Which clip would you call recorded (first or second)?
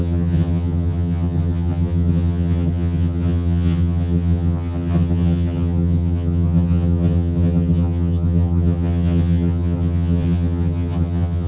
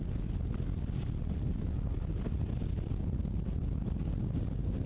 second